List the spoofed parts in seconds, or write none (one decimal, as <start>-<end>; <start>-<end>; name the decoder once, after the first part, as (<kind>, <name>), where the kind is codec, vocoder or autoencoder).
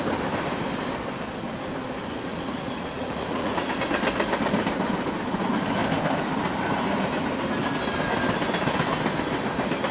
2.3-3.7 (vocoder, Vocos)